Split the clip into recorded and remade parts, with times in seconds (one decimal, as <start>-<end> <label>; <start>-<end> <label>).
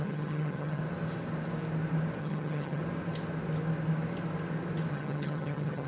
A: 0.0-0.8 remade; 0.8-2.2 recorded; 2.2-2.8 remade; 2.8-4.9 recorded; 4.9-5.9 remade